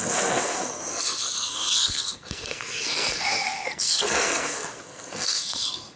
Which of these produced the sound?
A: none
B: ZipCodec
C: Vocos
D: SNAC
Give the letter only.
D